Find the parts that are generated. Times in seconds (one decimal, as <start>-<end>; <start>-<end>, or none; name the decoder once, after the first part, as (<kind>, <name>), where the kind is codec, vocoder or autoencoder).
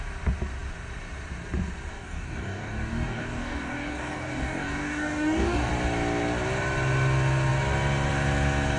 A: 1.9-5.7 (codec, DAC)